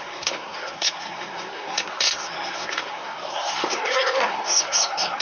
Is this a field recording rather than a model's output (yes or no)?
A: no